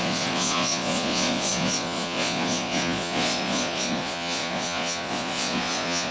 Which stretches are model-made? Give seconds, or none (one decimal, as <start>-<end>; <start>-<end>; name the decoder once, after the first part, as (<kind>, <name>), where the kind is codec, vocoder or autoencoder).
0.0-6.1 (vocoder, Vocos)